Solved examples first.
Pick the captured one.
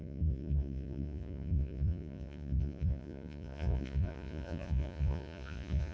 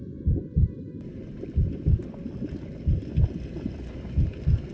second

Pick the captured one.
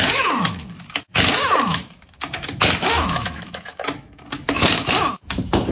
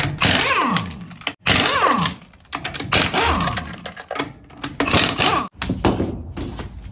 second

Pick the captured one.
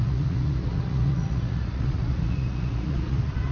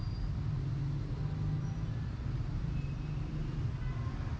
second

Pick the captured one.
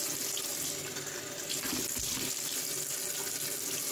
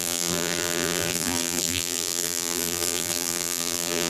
first